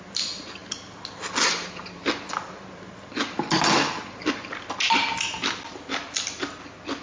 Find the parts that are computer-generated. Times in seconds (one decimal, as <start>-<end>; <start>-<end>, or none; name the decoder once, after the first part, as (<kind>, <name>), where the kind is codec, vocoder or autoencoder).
none